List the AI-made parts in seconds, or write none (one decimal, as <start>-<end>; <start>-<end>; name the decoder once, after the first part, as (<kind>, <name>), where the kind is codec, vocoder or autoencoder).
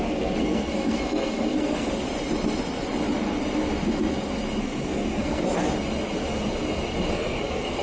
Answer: 0.0-1.9 (codec, SNAC); 4.6-5.4; 7.1-7.8